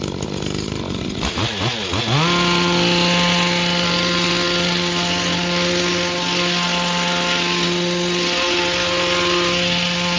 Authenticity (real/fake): real